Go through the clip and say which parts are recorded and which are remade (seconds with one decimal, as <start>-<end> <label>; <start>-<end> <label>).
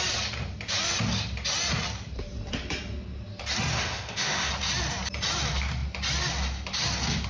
0.0-3.7 recorded; 3.7-4.5 remade; 4.5-7.3 recorded